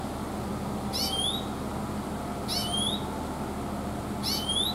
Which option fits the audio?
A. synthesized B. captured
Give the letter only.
B